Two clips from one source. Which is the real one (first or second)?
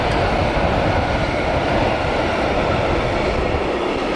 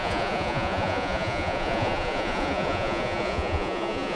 first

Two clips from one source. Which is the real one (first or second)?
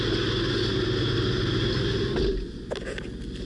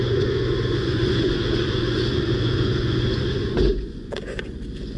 first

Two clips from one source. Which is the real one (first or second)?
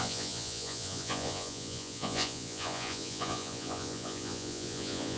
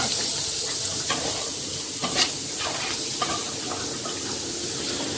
second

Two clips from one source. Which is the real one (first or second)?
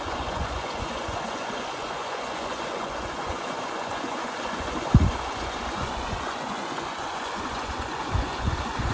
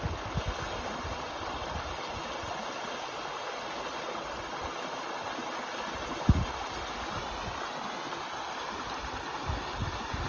second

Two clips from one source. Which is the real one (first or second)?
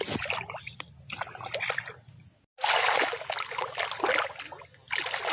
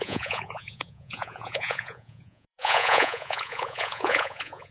first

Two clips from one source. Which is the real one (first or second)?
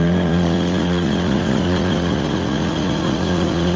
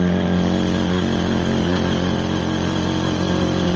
second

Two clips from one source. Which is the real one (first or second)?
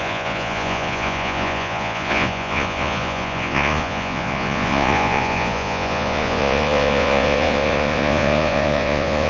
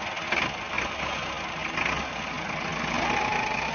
second